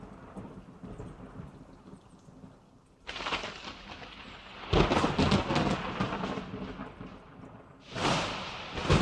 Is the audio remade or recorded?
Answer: recorded